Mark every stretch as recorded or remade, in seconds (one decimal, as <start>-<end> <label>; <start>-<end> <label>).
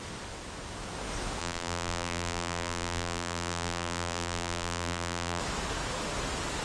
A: 0.0-1.4 recorded; 1.4-5.4 remade; 5.4-6.6 recorded